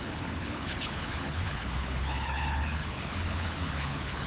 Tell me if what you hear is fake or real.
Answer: fake